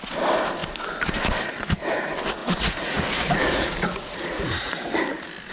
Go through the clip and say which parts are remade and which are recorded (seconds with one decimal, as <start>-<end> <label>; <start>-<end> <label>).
0.0-2.4 recorded; 2.4-4.9 remade; 4.9-5.5 recorded